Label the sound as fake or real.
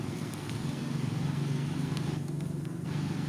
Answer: fake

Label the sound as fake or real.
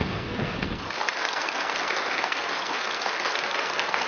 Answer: fake